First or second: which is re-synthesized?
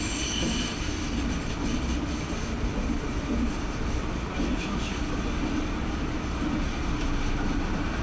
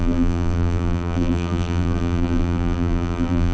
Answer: second